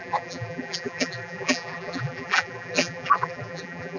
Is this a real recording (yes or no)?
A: no